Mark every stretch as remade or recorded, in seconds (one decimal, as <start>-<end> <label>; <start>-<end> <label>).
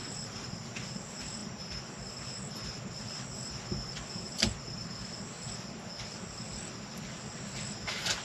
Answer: 0.0-8.2 recorded